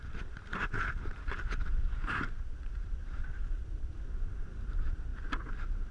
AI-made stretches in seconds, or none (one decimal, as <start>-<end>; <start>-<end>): 0.0-5.1

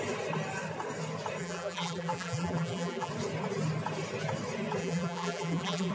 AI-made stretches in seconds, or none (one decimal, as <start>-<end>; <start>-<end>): 1.4-3.1; 4.8-5.9

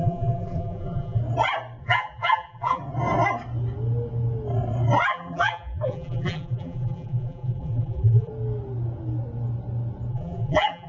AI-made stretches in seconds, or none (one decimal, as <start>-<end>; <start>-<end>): 0.0-1.2; 1.8-2.8; 5.1-8.3; 10.1-10.9

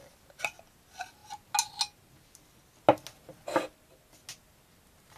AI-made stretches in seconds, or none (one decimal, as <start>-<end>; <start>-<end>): none

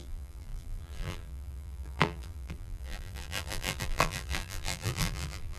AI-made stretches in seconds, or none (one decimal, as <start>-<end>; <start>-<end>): 0.0-5.6

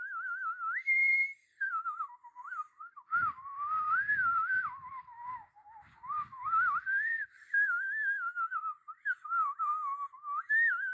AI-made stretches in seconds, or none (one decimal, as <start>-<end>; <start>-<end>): 0.0-9.7; 10.4-10.9

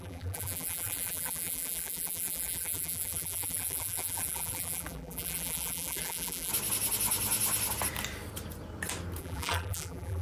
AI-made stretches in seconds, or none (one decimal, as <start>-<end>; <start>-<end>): 0.0-6.5; 9.2-10.2

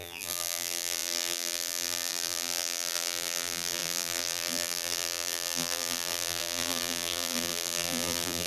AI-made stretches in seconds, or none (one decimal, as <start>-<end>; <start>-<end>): 0.0-8.5